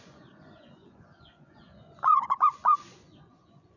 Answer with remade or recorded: remade